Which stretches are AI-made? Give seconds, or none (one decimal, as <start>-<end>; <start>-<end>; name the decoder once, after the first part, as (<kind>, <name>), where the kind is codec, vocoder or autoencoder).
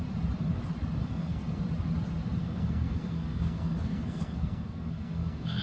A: 1.0-1.6 (codec, SNAC); 2.4-5.6